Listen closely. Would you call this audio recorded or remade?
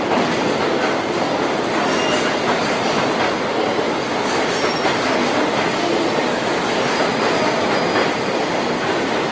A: recorded